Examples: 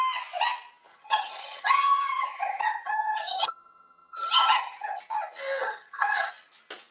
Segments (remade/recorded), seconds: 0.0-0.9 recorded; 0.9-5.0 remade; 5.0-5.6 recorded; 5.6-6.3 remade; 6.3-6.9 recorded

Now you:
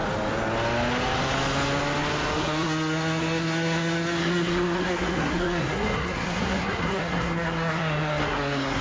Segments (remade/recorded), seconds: 0.0-2.4 recorded; 2.4-8.8 remade

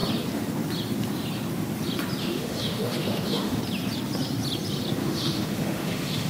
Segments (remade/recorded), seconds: 0.0-2.2 recorded; 2.2-3.6 remade; 3.6-5.0 recorded; 5.0-6.3 remade

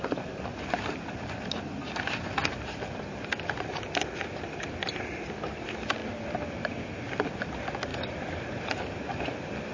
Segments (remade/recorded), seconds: 0.0-6.0 recorded; 6.0-7.0 remade; 7.0-9.7 recorded

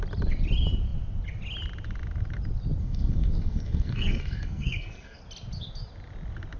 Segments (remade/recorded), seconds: 0.0-2.8 recorded; 2.8-5.2 remade; 5.2-6.6 recorded

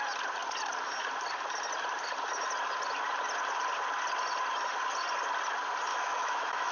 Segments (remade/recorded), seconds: 0.0-5.9 recorded; 5.9-6.7 remade

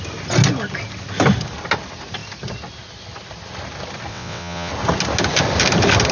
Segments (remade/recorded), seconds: 0.0-4.1 recorded; 4.1-4.7 remade; 4.7-6.1 recorded

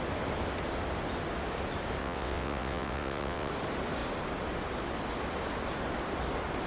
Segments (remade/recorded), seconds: 0.0-2.0 recorded; 2.0-3.5 remade; 3.5-6.7 recorded